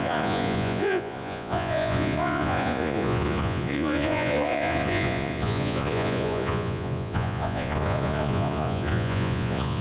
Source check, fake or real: fake